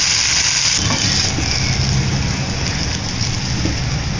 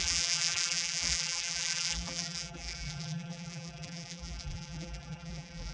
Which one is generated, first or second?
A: second